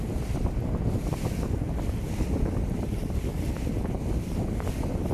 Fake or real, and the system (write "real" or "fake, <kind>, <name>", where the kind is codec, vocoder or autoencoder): real